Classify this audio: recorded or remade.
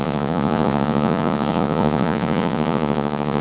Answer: remade